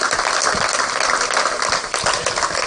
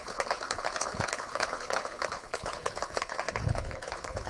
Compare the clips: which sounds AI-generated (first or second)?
second